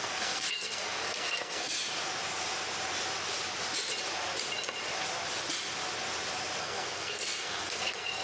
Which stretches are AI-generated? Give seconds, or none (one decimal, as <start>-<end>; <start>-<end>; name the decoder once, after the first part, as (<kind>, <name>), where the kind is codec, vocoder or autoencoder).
0.0-1.8 (codec, SNAC); 6.6-8.2